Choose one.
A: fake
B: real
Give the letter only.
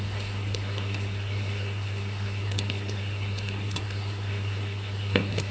A